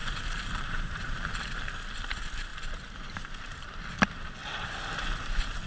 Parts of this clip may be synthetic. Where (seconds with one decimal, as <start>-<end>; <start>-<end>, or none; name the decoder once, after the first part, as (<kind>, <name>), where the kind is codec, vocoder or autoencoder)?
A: 0.0-1.8 (vocoder, BigVGAN v2); 2.5-3.8